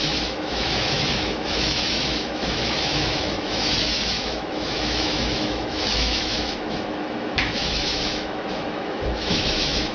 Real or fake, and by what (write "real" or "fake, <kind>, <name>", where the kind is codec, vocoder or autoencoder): fake, autoencoder, DAC-VAE